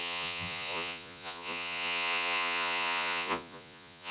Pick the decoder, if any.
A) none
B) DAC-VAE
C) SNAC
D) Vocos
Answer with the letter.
D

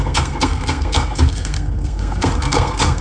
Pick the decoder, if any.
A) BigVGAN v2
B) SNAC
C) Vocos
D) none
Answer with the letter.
B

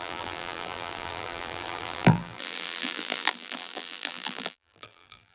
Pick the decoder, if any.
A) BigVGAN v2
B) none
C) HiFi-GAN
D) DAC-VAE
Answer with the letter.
A